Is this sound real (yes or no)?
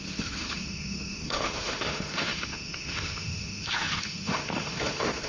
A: no